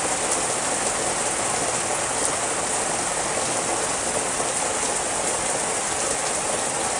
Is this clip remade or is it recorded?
recorded